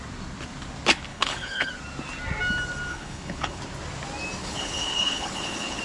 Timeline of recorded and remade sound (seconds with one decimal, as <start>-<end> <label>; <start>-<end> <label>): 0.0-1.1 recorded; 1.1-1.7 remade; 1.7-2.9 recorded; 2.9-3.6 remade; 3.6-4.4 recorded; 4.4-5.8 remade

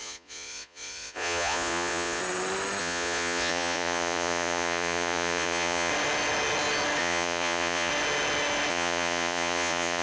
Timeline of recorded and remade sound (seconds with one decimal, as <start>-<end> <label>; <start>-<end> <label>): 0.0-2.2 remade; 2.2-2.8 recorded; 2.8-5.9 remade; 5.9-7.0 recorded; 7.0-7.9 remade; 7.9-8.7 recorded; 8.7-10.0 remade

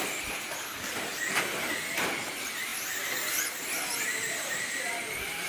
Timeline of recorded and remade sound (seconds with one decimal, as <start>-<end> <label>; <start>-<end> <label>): 0.0-5.5 recorded

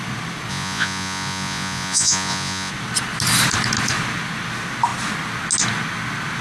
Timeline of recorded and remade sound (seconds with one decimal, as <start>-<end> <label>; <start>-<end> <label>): 0.0-0.5 recorded; 0.5-2.7 remade; 2.7-6.4 recorded

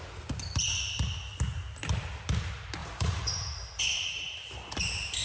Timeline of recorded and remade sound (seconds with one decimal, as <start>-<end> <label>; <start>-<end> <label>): 0.0-2.8 recorded; 2.8-3.8 remade; 3.8-5.2 recorded

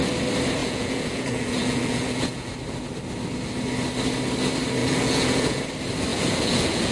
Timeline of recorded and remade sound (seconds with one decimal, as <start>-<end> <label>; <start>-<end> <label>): 0.0-0.6 recorded; 0.6-2.5 remade; 2.5-4.8 recorded; 4.8-5.6 remade; 5.6-6.1 recorded; 6.1-6.9 remade

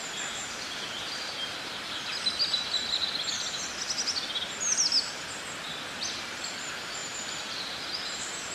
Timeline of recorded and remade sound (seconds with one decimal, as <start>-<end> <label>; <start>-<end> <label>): 0.0-7.0 recorded; 7.0-8.5 remade

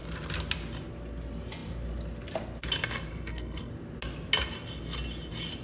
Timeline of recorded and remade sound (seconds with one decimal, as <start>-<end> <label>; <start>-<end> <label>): 0.0-3.1 recorded; 3.1-3.7 remade; 3.7-5.6 recorded